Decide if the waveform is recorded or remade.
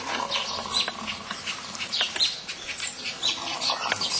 recorded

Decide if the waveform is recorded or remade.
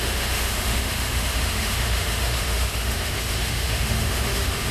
remade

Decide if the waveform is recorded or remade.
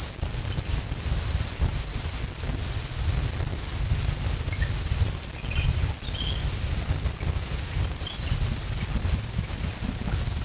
recorded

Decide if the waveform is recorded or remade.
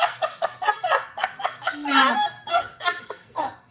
remade